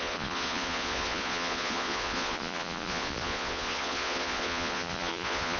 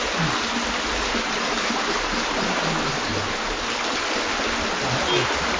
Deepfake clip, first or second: first